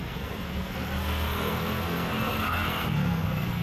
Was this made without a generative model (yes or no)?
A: no